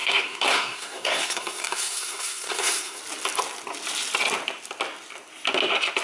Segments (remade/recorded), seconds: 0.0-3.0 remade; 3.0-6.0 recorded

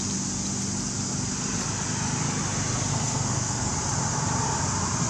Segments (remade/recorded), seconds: 0.0-2.9 recorded; 2.9-3.7 remade; 3.7-5.1 recorded

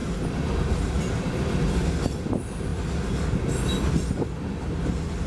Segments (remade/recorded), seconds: 0.0-5.3 recorded